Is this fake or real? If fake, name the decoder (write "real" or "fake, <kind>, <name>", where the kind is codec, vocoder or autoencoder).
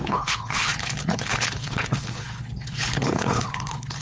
fake, codec, HILCodec